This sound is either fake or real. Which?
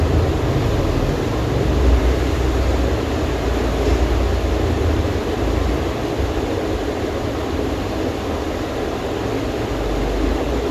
real